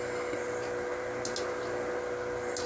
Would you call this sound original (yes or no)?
yes